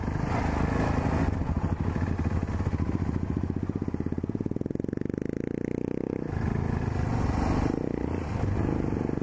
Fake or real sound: real